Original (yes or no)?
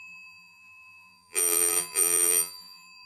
no